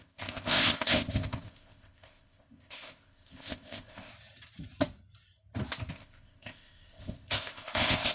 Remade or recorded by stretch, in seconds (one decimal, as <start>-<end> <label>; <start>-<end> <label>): 0.0-4.1 remade; 4.1-5.9 recorded; 5.9-8.1 remade